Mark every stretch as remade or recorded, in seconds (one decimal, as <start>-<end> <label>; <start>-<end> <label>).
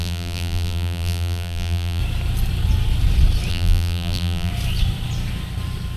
0.0-2.0 remade; 2.0-3.5 recorded; 3.5-4.5 remade; 4.5-6.0 recorded